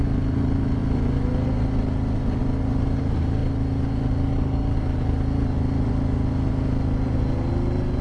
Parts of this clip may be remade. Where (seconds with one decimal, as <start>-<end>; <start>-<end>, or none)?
none

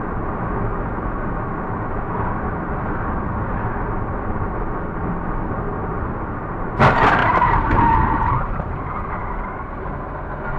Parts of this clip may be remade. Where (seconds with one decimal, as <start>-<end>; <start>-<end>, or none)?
none

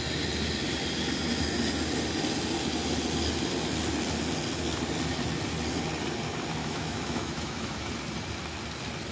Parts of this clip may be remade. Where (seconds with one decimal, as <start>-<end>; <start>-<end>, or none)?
6.6-7.9

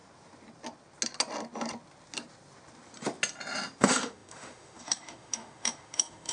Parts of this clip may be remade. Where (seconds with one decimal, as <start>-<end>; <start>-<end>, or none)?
3.8-6.3

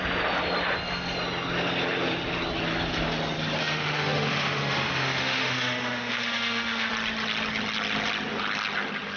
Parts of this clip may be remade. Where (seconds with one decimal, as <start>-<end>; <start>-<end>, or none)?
3.6-6.9